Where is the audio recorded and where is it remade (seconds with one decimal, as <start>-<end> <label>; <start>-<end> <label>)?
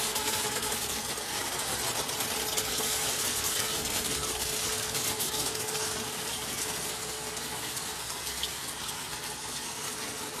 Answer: 0.0-1.7 remade; 1.7-2.6 recorded; 2.6-10.4 remade